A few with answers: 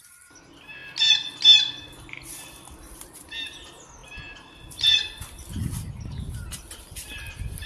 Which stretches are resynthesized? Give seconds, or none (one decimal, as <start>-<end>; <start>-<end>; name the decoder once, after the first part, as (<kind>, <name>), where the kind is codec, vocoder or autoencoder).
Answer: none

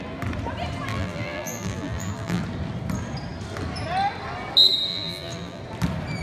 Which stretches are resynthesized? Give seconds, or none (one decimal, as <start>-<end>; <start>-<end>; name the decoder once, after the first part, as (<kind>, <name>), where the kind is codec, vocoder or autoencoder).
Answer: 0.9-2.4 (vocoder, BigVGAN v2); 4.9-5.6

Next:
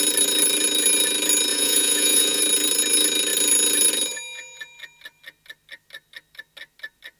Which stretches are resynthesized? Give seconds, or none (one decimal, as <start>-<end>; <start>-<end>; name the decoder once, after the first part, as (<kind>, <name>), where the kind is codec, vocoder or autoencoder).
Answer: 1.5-2.4 (vocoder, Vocos)

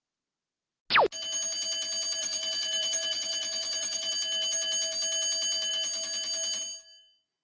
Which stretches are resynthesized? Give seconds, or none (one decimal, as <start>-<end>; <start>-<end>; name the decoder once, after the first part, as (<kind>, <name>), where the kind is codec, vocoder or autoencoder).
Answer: 2.2-4.1 (vocoder, BigVGAN v2)

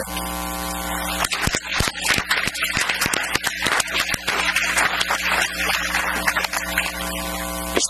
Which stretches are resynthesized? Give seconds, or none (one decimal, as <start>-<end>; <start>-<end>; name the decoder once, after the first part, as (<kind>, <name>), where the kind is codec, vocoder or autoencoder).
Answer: none

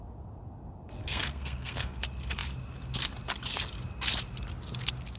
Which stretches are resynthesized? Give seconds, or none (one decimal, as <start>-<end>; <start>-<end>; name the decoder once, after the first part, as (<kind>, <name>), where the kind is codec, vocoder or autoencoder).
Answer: 1.0-2.0 (codec, SNAC)

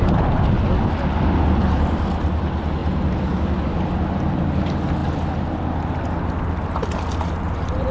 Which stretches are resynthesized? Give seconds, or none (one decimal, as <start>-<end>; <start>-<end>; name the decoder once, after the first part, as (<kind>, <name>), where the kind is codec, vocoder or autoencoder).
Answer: 2.8-4.6 (vocoder, BigVGAN v2)